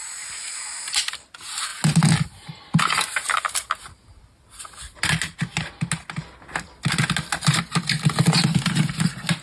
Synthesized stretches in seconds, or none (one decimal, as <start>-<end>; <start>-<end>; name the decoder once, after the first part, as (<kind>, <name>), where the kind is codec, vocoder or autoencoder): none